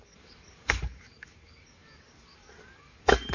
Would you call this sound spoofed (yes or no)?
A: yes